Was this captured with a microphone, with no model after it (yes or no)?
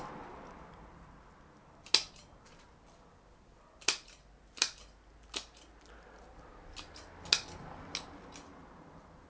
yes